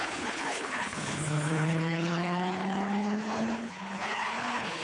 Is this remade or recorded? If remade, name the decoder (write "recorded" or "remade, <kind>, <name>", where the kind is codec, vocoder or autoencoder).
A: remade, codec, HILCodec